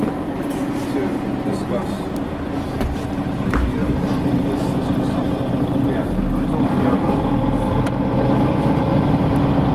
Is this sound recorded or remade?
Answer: recorded